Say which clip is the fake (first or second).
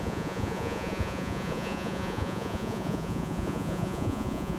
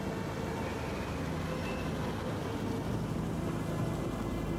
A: first